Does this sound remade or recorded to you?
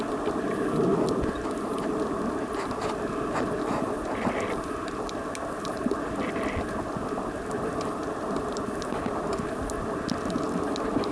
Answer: recorded